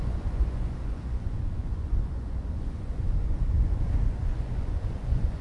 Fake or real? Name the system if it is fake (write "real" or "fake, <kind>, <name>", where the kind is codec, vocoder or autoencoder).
fake, vocoder, Vocos